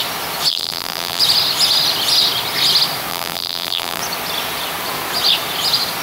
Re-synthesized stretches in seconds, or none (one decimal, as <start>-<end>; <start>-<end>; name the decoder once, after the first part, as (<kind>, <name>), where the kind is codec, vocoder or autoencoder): 0.5-1.2 (vocoder, BigVGAN v2); 3.1-4.0